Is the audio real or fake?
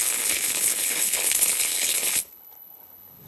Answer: fake